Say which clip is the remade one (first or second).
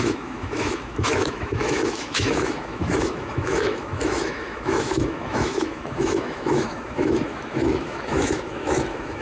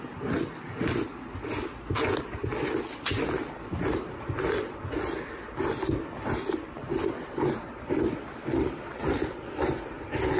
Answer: first